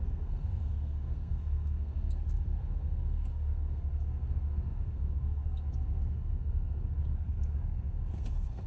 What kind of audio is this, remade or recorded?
remade